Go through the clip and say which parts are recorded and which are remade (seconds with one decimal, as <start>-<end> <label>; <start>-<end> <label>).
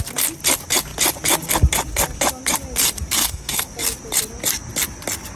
0.0-3.2 recorded; 3.2-3.7 remade; 3.7-5.4 recorded